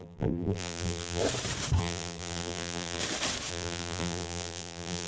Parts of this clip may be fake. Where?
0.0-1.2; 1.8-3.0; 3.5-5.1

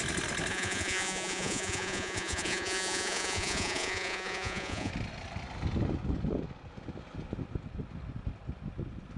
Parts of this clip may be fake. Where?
0.5-4.9

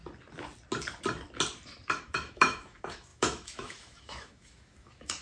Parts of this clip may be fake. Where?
2.0-5.2

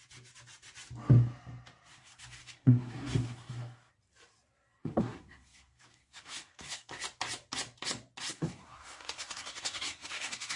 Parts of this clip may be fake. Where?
1.9-3.9; 4.8-6.9; 8.3-10.6

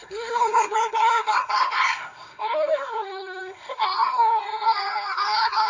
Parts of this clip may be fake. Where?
0.0-5.7

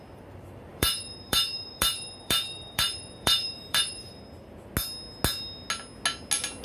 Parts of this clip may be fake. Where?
0.7-4.7

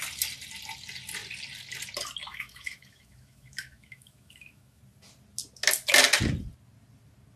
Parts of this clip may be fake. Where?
2.2-4.8